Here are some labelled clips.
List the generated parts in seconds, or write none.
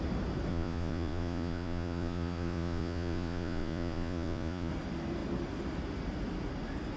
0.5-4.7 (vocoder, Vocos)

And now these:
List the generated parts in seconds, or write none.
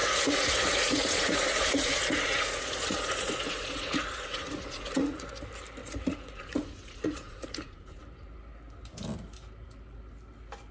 0.0-5.3 (vocoder, Vocos); 5.8-8.0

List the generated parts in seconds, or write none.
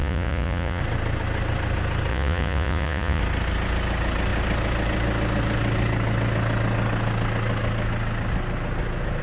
0.0-0.8 (vocoder, Vocos); 2.1-3.2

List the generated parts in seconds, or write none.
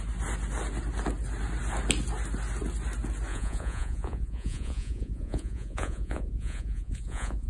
3.3-7.5 (vocoder, Vocos)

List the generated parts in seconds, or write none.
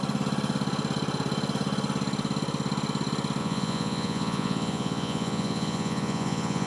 3.4-6.7 (vocoder, Vocos)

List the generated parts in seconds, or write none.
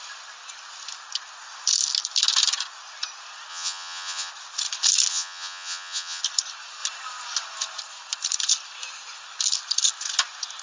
3.5-4.3 (vocoder, Vocos); 5.1-6.2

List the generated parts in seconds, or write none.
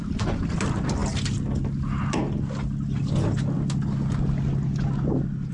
none